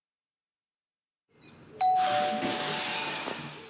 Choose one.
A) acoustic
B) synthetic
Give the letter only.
A